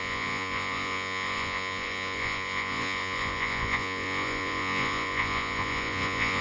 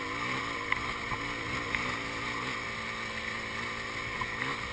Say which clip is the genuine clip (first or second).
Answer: second